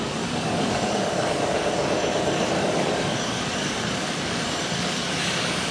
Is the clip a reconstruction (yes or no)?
yes